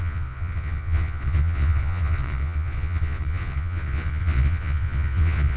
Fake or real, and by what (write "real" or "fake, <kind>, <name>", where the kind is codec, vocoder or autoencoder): fake, vocoder, Vocos